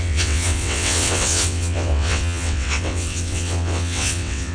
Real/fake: fake